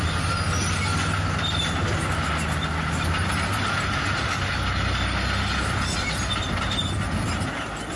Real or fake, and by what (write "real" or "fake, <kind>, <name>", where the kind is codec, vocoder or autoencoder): real